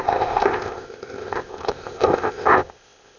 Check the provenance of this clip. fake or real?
fake